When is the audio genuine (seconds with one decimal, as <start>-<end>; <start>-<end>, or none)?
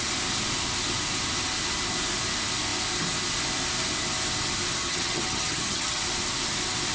0.0-4.8; 6.0-6.9